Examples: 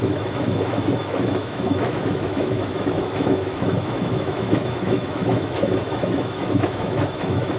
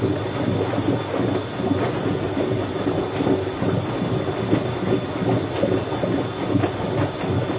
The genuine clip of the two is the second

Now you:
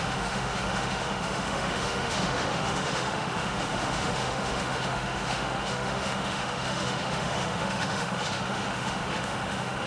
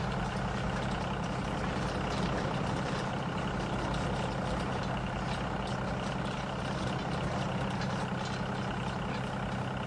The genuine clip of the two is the second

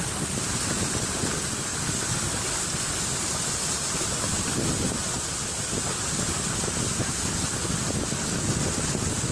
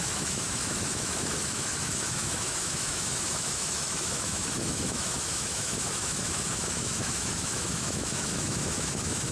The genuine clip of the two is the first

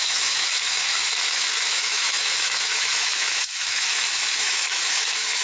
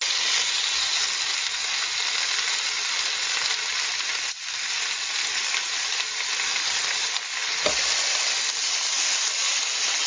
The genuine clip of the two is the second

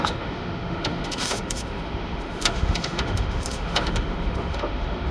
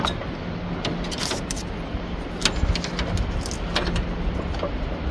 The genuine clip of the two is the second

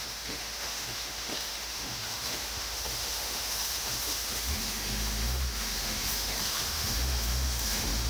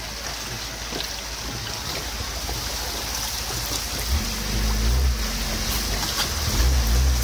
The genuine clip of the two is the second